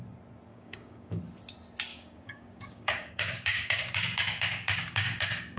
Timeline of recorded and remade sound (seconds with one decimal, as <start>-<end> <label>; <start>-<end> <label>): 0.0-0.5 recorded; 0.5-1.2 remade; 1.2-1.9 recorded; 1.9-5.6 remade